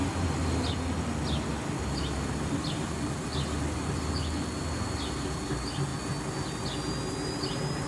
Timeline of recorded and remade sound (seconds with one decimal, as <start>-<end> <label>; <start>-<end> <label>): 0.0-7.9 recorded